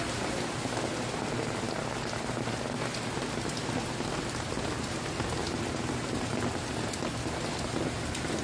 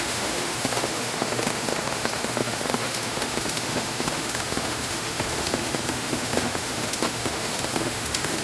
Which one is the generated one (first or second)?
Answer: second